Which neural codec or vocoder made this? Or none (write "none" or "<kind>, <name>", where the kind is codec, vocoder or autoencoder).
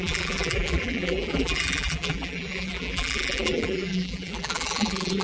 vocoder, BigVGAN v2